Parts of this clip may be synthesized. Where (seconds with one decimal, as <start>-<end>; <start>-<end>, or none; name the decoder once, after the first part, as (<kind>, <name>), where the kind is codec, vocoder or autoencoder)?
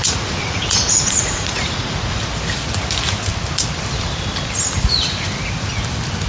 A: 0.0-2.2 (vocoder, Vocos)